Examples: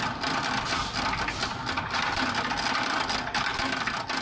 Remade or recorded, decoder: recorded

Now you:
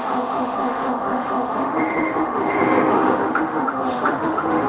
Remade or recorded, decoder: remade, autoencoder, DAC-VAE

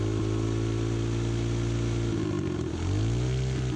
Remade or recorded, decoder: recorded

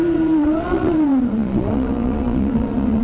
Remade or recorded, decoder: remade, vocoder, Vocos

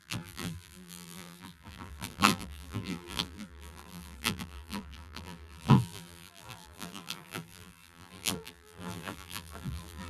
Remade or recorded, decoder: remade, vocoder, BigVGAN v2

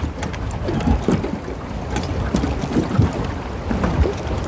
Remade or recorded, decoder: recorded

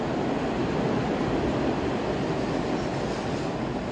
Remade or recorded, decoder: recorded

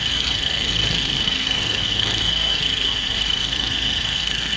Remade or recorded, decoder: remade, codec, SNAC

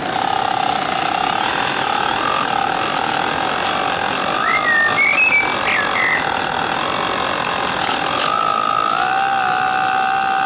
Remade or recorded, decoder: recorded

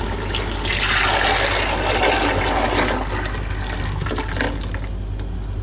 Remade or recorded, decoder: recorded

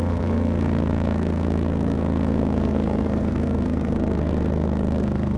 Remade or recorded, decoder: remade, codec, SNAC